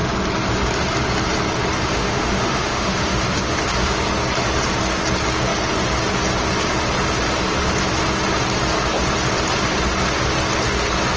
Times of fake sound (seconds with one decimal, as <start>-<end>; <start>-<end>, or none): 1.9-3.6